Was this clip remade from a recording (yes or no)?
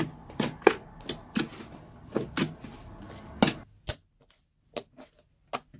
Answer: no